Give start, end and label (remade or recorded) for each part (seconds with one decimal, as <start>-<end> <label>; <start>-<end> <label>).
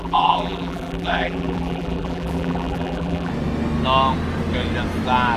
0.0-3.3 remade; 3.3-5.4 recorded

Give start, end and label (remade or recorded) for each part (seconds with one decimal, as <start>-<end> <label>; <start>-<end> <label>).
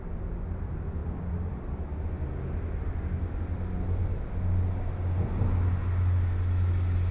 0.0-7.1 recorded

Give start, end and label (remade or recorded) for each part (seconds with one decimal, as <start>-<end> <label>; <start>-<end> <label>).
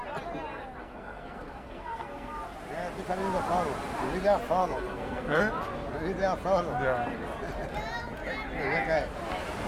0.0-0.8 recorded; 0.8-2.4 remade; 2.4-4.6 recorded; 4.6-5.4 remade; 5.4-9.7 recorded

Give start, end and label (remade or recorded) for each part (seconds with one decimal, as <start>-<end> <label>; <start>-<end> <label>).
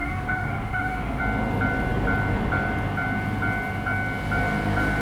0.0-1.2 remade; 1.2-5.0 recorded